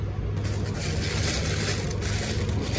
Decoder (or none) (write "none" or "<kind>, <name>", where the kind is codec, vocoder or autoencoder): none